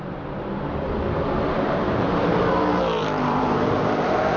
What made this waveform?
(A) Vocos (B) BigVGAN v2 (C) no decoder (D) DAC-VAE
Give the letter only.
B